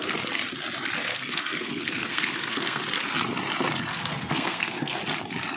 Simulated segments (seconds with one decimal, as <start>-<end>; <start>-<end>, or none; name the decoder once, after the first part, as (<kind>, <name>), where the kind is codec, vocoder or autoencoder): 1.1-2.8 (codec, SNAC); 3.9-5.0